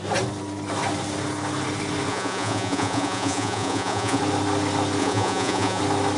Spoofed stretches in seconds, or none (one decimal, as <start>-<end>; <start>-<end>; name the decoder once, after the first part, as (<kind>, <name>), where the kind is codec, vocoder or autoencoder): 2.1-4.2 (vocoder, Vocos); 5.0-5.8